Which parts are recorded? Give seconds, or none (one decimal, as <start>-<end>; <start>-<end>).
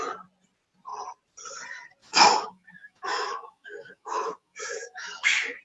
0.0-2.0